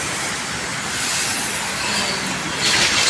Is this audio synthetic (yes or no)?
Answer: no